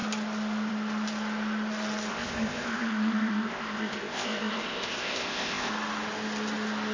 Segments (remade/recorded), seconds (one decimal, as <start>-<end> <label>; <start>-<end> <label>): 0.0-2.1 recorded; 2.1-5.7 remade; 5.7-6.9 recorded

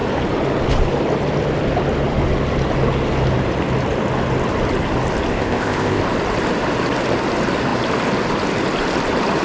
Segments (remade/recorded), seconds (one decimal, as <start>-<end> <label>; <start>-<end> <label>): 0.0-5.3 recorded; 5.3-6.0 remade; 6.0-9.4 recorded

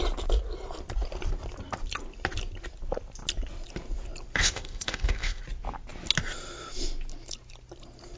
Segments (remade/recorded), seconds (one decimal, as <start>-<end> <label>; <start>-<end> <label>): 0.0-4.4 recorded; 4.4-5.4 remade; 5.4-8.2 recorded

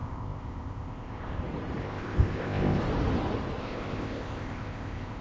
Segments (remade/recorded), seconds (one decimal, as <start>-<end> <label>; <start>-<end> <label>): 0.0-1.4 remade; 1.4-1.8 recorded; 1.8-2.8 remade; 2.8-3.6 recorded; 3.6-5.2 remade